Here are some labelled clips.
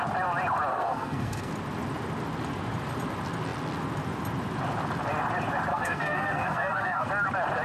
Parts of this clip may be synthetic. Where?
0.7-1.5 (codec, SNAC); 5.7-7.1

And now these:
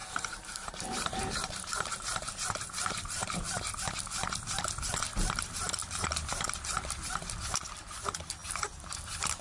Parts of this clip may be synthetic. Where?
0.0-3.8 (vocoder, BigVGAN v2); 5.8-6.3

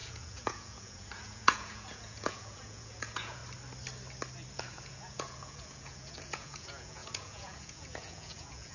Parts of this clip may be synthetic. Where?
0.0-3.4 (vocoder, Vocos); 4.5-8.7

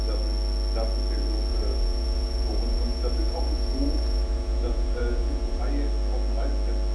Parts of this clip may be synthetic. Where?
1.5-5.6 (vocoder, Vocos)

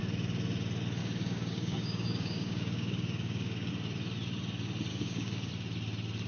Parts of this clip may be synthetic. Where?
1.0-3.7 (codec, DAC); 4.9-5.5